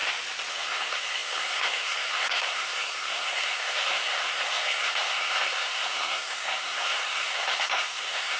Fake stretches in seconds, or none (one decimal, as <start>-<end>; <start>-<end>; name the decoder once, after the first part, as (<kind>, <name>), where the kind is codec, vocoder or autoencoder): 0.5-8.4 (codec, SNAC)